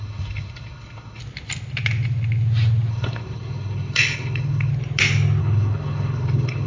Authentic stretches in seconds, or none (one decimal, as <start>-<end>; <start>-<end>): 1.2-2.9; 4.7-5.4